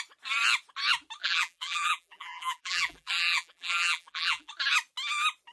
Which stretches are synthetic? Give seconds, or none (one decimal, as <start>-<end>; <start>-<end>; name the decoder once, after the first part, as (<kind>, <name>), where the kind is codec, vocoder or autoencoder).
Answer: 1.2-4.5 (vocoder, BigVGAN v2)